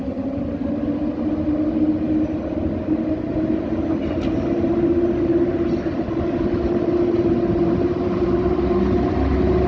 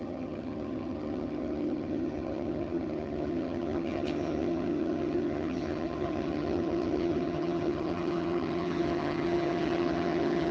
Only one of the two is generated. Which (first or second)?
second